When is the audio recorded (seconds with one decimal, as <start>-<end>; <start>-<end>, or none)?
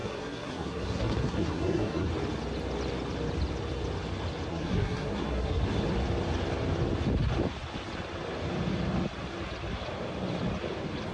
2.1-4.5; 5.6-11.1